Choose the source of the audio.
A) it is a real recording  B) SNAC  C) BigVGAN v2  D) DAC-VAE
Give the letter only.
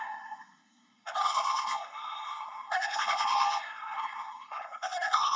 B